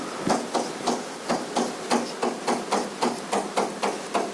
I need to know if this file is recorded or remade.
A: recorded